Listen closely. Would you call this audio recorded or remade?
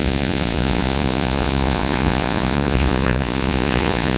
remade